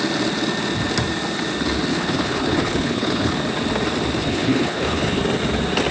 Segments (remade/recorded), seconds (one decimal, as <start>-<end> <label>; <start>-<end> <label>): 0.0-1.9 recorded; 1.9-3.3 remade; 3.3-4.2 recorded; 4.2-5.2 remade; 5.2-5.9 recorded